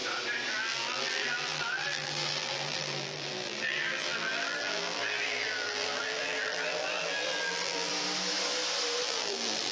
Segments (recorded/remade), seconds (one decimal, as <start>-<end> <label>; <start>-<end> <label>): 0.0-0.5 recorded; 0.5-7.9 remade; 7.9-9.0 recorded; 9.0-9.7 remade